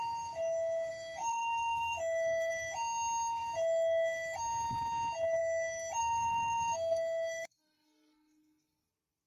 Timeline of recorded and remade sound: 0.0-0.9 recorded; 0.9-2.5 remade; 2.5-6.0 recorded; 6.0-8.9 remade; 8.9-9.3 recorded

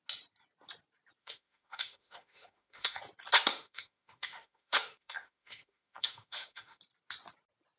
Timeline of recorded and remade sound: 0.0-1.2 recorded; 1.2-3.0 remade; 3.0-3.5 recorded; 3.5-6.8 remade; 6.8-7.8 recorded

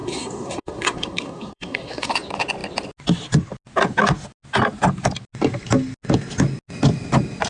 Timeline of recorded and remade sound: 0.0-2.1 remade; 2.1-7.5 recorded